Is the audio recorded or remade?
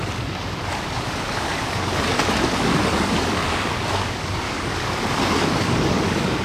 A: remade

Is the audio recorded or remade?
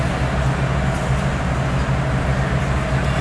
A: recorded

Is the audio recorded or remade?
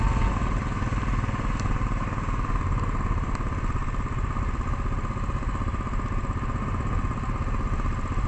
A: recorded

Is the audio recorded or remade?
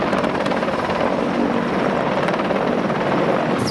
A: recorded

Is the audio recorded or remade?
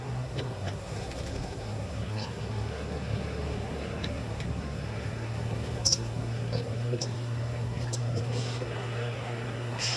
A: remade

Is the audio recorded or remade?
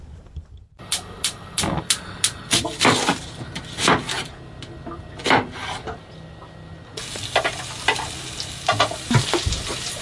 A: recorded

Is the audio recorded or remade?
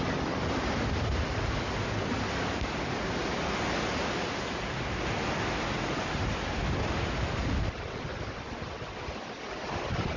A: recorded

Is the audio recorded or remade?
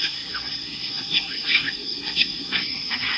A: remade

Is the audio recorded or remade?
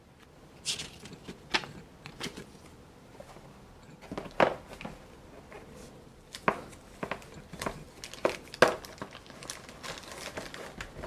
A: recorded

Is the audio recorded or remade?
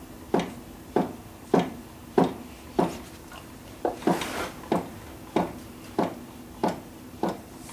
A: recorded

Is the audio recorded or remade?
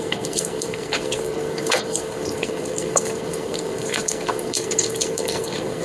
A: remade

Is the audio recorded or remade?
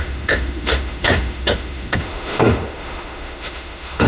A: remade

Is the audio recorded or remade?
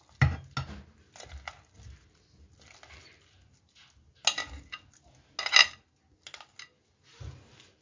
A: recorded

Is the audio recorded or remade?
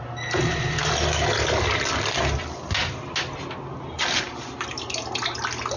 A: recorded